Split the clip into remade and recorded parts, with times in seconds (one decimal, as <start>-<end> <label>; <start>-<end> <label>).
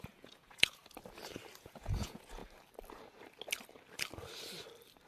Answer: 0.0-0.8 remade; 0.8-1.6 recorded; 1.6-2.4 remade; 2.4-5.1 recorded